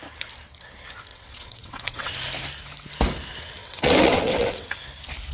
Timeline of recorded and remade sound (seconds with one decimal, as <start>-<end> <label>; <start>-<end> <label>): 0.0-1.1 recorded; 1.1-2.1 remade; 2.1-3.6 recorded; 3.6-4.7 remade; 4.7-5.3 recorded